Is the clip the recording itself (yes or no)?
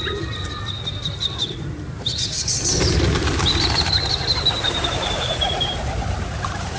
yes